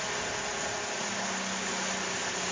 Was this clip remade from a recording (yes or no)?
no